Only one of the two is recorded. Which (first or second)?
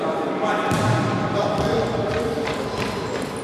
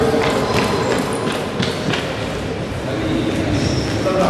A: second